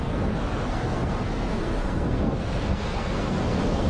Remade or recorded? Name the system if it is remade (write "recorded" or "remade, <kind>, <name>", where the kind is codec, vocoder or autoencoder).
remade, codec, SNAC